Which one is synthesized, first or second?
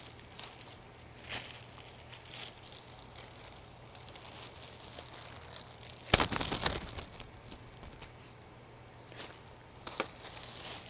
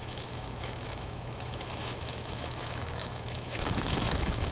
second